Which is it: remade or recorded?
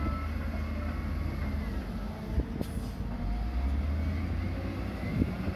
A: recorded